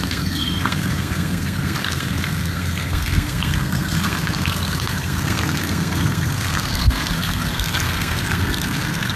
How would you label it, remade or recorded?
remade